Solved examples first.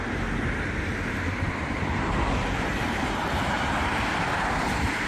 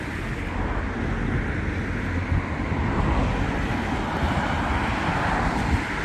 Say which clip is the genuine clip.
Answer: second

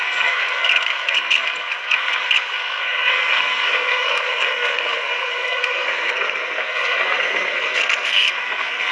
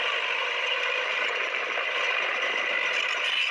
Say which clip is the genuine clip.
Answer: second